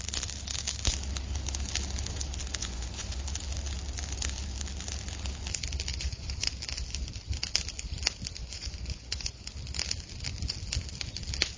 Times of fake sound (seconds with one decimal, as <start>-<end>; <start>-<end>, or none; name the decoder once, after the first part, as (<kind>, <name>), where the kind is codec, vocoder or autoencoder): 2.6-3.2 (vocoder, Vocos); 5.9-6.5; 8.4-9.5